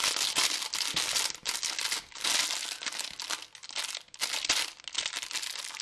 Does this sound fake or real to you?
real